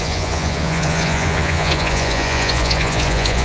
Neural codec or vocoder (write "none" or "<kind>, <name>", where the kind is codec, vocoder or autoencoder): vocoder, Vocos